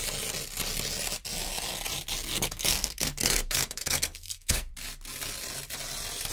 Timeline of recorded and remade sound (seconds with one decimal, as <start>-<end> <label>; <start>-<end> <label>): 0.0-2.3 recorded; 2.3-4.7 remade; 4.7-6.3 recorded